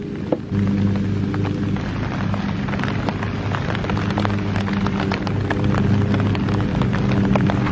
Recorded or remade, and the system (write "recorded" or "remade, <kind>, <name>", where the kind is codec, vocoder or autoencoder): recorded